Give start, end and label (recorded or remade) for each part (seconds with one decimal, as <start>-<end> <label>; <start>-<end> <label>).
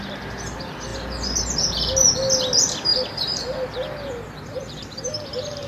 0.0-2.9 recorded; 2.9-5.7 remade